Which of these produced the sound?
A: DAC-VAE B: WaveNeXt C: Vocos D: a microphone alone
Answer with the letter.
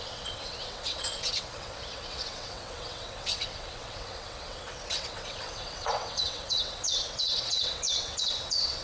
B